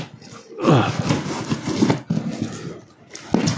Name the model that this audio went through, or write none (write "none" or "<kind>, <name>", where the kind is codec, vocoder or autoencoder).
none